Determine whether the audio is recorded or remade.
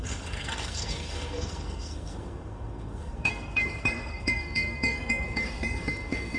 remade